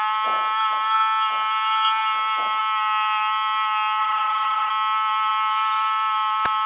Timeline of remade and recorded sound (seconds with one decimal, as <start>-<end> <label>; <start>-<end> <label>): 0.0-4.0 recorded; 4.0-4.7 remade; 4.7-6.7 recorded